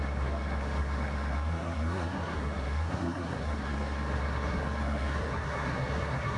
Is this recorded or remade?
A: remade